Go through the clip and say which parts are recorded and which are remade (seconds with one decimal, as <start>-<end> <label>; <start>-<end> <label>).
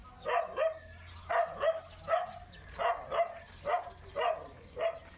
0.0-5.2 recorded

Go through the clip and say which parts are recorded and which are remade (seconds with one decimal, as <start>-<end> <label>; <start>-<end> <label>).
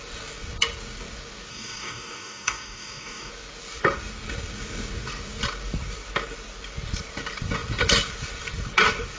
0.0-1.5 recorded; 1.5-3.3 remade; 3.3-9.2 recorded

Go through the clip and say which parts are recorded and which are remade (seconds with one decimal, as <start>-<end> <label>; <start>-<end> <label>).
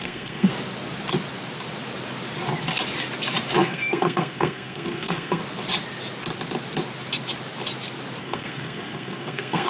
0.0-0.5 remade; 0.5-3.6 recorded; 3.6-5.4 remade; 5.4-8.2 recorded; 8.2-9.7 remade